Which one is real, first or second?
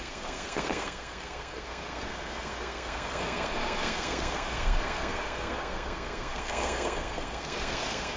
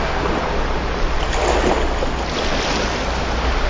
second